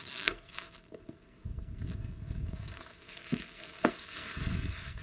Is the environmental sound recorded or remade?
remade